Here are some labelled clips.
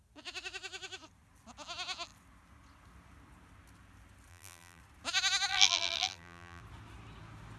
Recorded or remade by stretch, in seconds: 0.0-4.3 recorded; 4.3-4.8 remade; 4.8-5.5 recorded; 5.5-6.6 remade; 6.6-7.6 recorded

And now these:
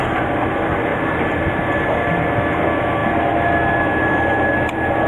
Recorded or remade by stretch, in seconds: 0.0-5.1 recorded

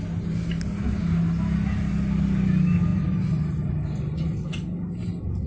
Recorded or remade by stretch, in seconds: 0.0-5.5 recorded

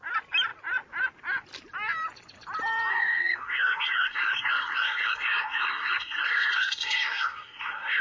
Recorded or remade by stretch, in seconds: 0.0-2.9 recorded; 2.9-8.0 remade

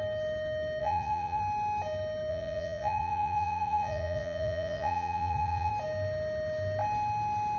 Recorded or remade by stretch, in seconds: 0.0-0.8 recorded; 0.8-1.4 remade; 1.4-2.3 recorded; 2.3-5.7 remade; 5.7-7.6 recorded